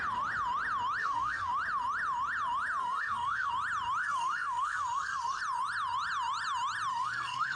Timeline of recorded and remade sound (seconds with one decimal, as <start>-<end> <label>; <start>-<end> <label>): 0.0-1.0 recorded; 1.0-1.5 remade; 1.5-2.8 recorded; 2.8-3.5 remade; 3.5-4.0 recorded; 4.0-5.4 remade; 5.4-6.9 recorded; 6.9-7.6 remade